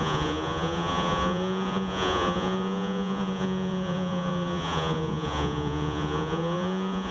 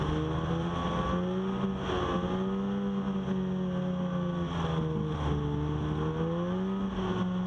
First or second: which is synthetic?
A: first